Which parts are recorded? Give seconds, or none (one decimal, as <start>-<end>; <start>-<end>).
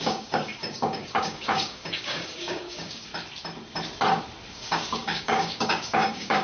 3.1-4.5